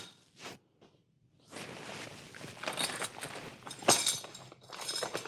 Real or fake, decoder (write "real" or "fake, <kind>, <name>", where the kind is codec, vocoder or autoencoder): real